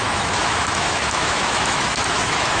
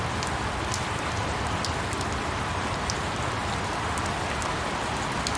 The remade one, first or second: first